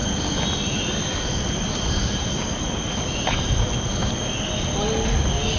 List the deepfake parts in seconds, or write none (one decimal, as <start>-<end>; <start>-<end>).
none